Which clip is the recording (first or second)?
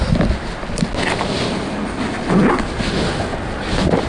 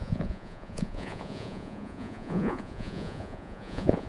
first